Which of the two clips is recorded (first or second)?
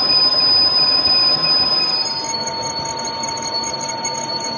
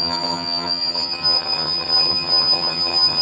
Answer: first